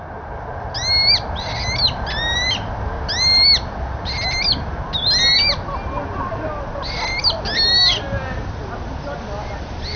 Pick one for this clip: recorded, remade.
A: recorded